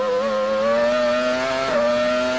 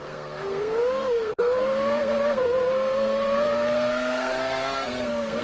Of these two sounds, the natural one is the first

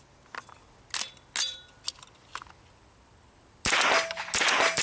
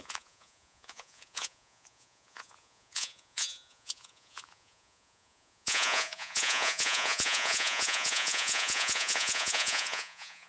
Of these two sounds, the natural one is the first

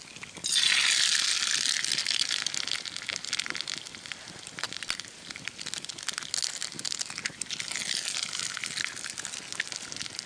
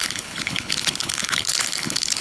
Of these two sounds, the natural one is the first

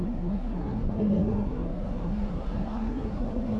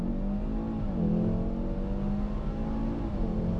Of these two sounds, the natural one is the second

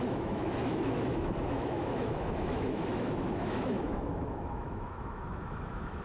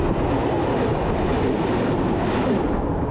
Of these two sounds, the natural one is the second